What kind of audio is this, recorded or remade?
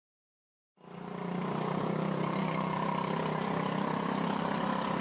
remade